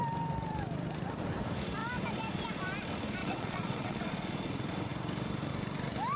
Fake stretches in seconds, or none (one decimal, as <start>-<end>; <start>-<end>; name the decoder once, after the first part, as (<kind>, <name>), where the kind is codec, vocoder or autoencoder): 3.2-4.1 (vocoder, WaveNeXt)